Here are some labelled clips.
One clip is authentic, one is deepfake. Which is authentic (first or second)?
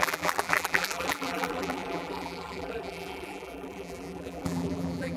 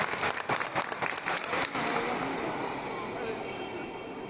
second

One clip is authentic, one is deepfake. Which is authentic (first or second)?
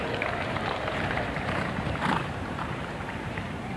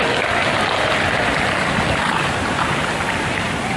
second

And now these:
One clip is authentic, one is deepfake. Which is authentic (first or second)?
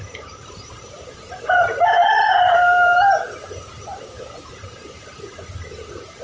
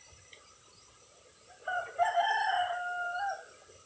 second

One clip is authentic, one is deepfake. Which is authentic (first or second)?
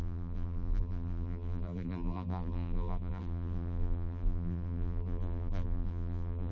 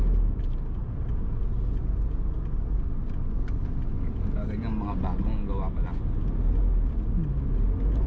second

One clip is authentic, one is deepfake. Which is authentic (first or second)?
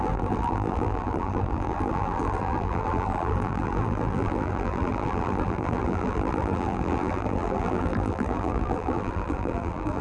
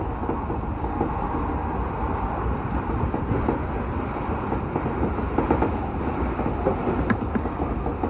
second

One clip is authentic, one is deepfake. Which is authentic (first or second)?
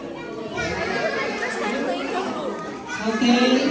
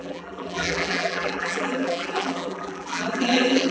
first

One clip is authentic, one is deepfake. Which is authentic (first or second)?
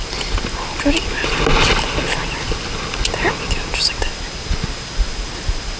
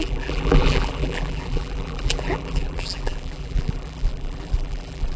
first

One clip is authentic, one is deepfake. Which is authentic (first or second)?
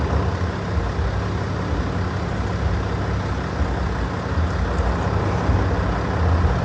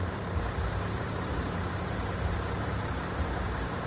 first